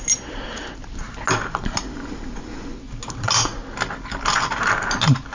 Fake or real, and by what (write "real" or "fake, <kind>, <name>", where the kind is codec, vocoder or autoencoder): real